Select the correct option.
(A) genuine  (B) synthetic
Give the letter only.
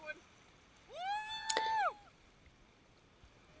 A